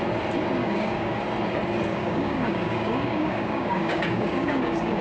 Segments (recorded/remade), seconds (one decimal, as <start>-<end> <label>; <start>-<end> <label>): 0.0-0.6 recorded; 0.6-1.2 remade; 1.2-1.9 recorded; 1.9-5.0 remade